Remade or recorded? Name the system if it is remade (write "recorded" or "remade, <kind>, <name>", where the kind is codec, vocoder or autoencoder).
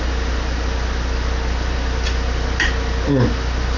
recorded